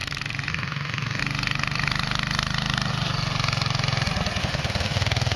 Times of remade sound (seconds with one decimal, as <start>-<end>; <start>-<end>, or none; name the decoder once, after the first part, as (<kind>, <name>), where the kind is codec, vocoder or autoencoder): 0.5-1.2 (autoencoder, DAC-VAE); 4.4-5.4